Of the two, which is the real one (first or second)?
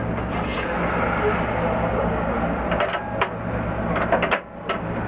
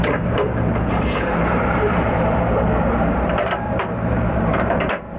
first